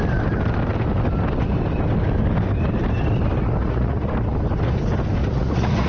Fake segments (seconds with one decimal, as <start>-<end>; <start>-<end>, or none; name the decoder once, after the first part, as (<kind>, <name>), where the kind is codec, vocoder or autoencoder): 3.6-4.1 (vocoder, Vocos); 5.2-5.9